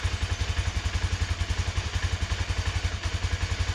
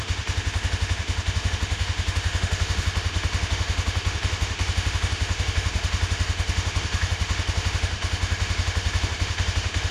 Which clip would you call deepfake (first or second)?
second